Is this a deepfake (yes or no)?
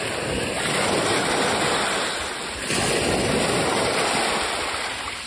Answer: no